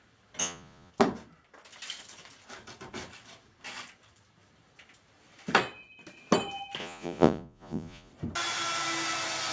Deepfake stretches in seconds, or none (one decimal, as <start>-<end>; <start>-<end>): 0.4-0.9; 6.8-8.1